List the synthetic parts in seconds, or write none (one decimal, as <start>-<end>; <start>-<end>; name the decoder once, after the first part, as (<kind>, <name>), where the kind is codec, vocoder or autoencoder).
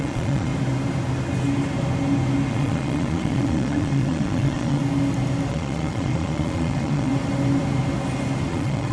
0.0-0.5 (vocoder, Vocos); 2.5-4.8; 5.5-7.1; 8.5-8.9